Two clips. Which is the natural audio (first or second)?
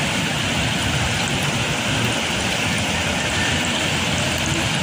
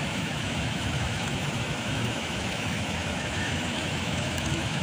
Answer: first